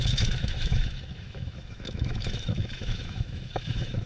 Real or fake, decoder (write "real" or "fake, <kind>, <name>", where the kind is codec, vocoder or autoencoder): fake, autoencoder, DAC-VAE